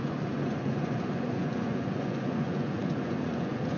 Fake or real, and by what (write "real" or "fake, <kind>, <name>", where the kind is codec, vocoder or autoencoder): fake, vocoder, Vocos